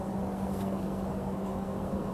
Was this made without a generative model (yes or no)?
no